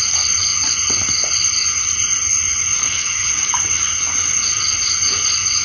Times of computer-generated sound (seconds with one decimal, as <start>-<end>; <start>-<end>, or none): 2.8-3.3